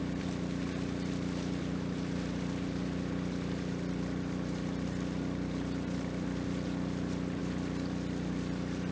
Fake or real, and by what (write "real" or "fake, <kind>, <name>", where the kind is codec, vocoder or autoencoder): real